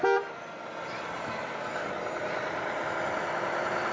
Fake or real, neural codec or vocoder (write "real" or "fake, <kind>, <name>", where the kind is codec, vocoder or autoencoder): real